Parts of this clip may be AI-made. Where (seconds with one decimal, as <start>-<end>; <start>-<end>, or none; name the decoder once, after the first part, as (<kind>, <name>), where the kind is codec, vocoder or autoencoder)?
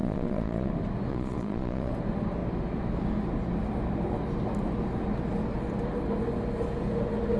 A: 0.0-0.7 (vocoder, Vocos); 1.1-1.9